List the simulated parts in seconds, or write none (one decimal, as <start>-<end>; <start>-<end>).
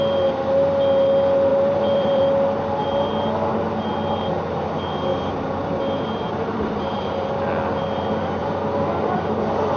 1.5-2.2; 5.1-7.3; 8.4-9.4